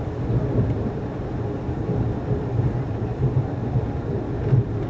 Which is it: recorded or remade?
remade